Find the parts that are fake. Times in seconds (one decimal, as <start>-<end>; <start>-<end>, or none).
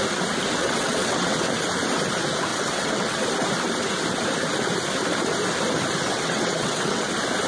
0.6-1.5; 2.5-3.2; 6.1-7.1